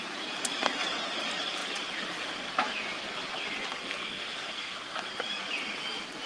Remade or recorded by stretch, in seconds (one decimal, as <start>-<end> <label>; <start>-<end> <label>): 0.0-3.8 recorded; 3.8-5.1 remade; 5.1-6.3 recorded